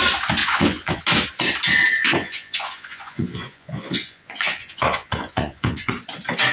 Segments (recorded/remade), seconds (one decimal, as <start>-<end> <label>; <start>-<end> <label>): 0.0-0.4 recorded; 0.4-1.0 remade; 1.0-2.0 recorded; 2.0-5.9 remade; 5.9-6.5 recorded